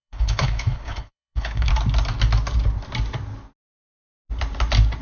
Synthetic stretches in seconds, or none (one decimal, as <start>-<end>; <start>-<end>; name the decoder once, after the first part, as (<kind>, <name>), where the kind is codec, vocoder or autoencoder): 0.0-1.7 (codec, HILCodec)